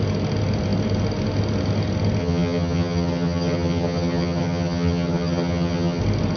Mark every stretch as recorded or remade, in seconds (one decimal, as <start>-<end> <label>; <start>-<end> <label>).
0.0-2.2 recorded; 2.2-6.0 remade; 6.0-6.4 recorded